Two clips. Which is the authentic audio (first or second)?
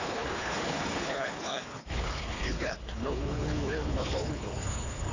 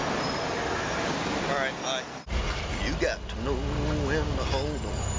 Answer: second